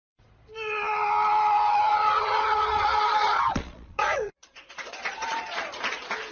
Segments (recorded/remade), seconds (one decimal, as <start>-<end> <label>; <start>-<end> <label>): 0.0-1.9 recorded; 1.9-5.6 remade; 5.6-6.3 recorded